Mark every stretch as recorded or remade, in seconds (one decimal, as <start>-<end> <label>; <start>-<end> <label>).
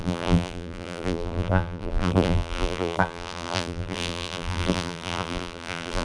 0.0-6.0 remade